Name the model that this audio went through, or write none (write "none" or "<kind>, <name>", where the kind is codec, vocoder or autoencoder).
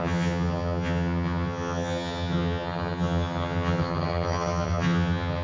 vocoder, HiFi-GAN